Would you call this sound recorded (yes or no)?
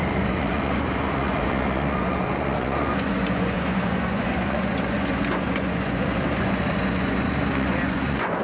no